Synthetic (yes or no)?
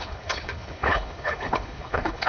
yes